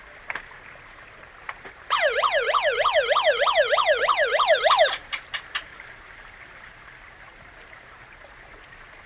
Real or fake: fake